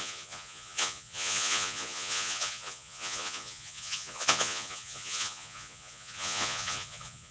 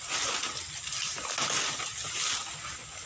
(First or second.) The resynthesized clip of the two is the first